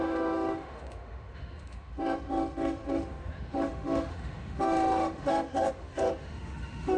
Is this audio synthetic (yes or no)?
yes